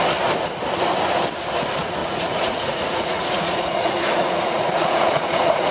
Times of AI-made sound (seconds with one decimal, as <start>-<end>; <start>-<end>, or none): 2.0-5.7